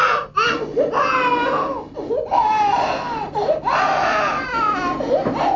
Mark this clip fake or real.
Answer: real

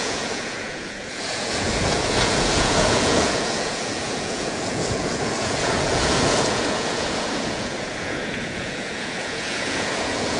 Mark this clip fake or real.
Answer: fake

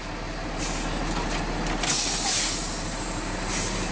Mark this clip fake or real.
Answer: real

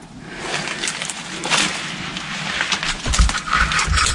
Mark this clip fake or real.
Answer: real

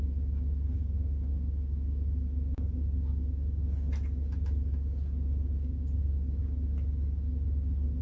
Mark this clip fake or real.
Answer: real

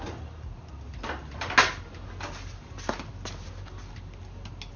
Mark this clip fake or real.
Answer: real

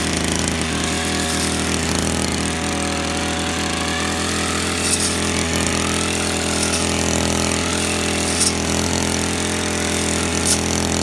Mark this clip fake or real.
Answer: real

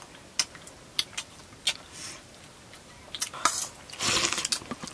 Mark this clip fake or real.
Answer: real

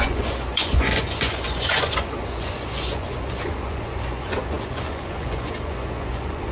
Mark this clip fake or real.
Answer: fake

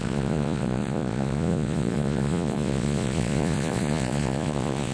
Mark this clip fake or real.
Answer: fake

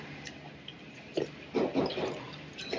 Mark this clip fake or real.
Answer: real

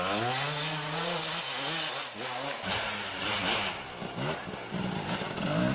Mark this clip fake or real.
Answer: real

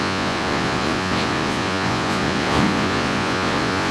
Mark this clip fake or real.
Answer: fake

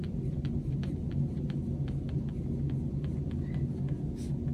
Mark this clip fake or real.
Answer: real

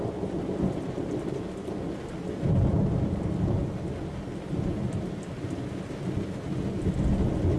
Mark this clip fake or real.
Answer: real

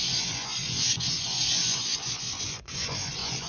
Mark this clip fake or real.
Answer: fake